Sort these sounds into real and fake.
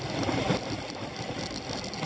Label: real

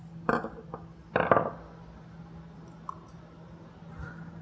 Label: real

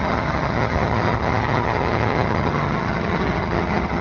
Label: fake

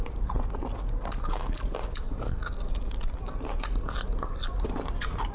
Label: real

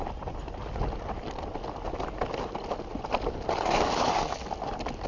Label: real